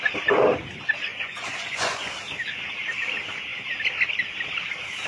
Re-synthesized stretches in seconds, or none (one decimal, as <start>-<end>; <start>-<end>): 1.1-2.1